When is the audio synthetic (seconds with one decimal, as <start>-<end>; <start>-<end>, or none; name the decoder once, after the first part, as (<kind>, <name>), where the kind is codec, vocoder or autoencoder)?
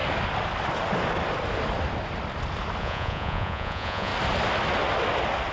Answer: 2.8-4.1 (vocoder, Vocos)